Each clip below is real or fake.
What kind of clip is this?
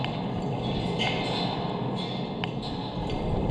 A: real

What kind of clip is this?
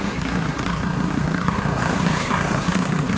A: fake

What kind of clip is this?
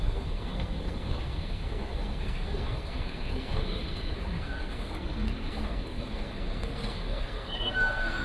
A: fake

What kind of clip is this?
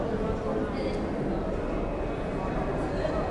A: real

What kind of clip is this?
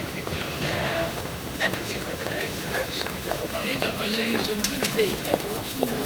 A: fake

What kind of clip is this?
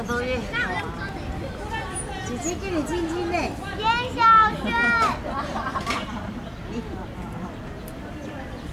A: real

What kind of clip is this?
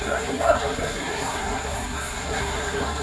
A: fake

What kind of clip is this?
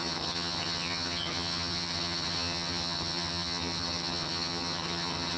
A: fake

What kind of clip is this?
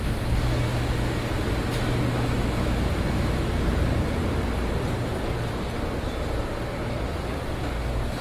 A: real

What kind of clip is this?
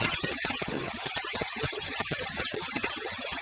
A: fake